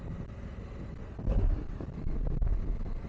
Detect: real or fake real